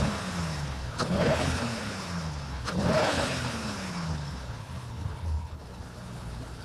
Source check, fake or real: fake